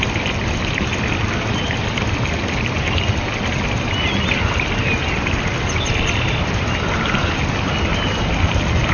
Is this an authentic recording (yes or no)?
yes